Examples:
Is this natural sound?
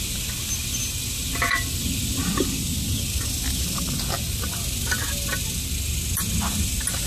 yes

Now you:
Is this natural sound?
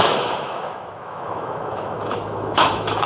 no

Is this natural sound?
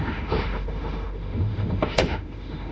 no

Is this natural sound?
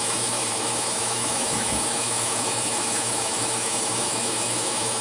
no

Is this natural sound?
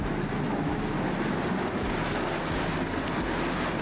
yes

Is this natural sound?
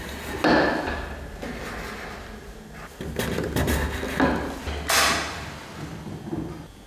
yes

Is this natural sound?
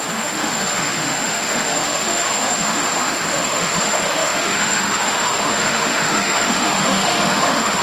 no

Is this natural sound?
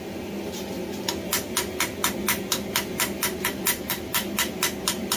yes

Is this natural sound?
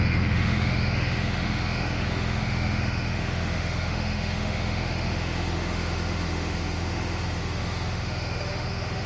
no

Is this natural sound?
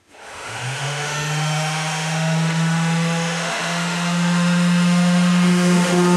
no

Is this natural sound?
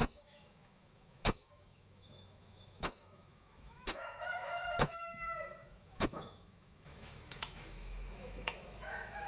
no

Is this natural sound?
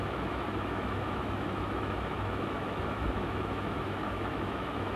no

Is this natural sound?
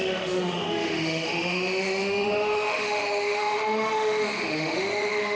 no